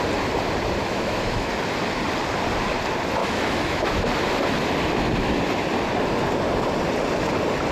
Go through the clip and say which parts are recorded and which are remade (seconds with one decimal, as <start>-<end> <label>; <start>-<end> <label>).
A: 0.0-0.8 recorded; 0.8-1.5 remade; 1.5-3.2 recorded; 3.2-4.1 remade; 4.1-7.7 recorded